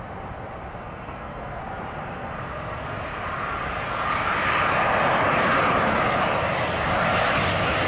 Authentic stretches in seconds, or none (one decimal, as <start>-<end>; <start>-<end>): 0.0-0.7; 1.6-2.0; 2.8-7.9